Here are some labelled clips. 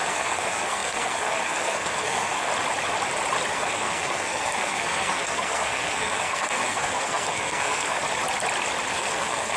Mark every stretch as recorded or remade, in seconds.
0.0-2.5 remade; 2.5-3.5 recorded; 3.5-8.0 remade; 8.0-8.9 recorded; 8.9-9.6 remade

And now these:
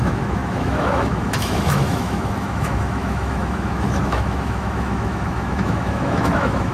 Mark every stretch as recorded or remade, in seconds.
0.0-6.7 remade